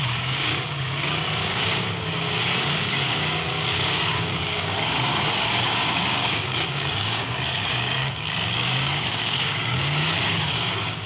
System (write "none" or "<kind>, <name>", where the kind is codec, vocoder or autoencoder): codec, DAC